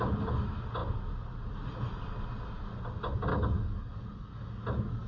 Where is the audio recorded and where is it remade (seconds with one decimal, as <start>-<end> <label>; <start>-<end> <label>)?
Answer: 0.0-3.3 recorded; 3.3-4.6 remade; 4.6-5.1 recorded